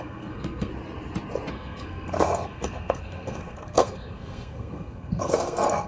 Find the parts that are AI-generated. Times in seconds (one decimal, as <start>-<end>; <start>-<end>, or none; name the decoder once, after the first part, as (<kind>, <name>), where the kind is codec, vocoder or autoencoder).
0.0-0.7 (codec, SNAC); 1.5-5.9